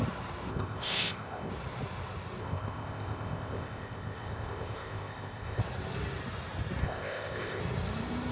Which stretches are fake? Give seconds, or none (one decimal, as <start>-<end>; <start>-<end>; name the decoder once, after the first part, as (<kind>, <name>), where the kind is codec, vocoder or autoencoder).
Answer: 0.5-1.5 (codec, ZipCodec); 2.4-5.6; 6.8-7.6